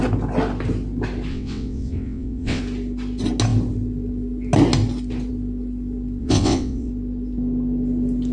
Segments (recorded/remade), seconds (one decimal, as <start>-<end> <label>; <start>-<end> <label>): 0.0-1.3 recorded; 1.3-2.6 remade; 2.6-6.2 recorded; 6.2-6.9 remade; 6.9-8.3 recorded